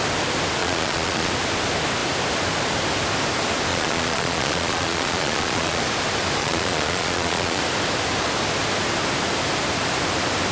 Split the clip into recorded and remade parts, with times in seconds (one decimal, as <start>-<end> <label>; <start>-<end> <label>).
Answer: 0.0-0.6 recorded; 0.6-1.3 remade; 1.3-3.7 recorded; 3.7-5.8 remade; 5.8-6.4 recorded; 6.4-7.6 remade; 7.6-10.5 recorded